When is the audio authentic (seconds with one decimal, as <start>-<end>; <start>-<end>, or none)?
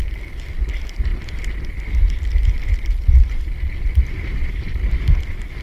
0.0-5.6